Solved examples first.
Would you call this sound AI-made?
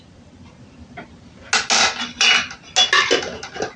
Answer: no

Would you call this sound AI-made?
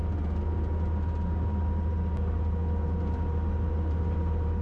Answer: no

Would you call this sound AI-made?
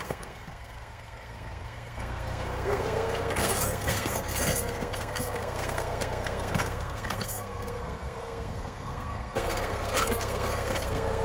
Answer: yes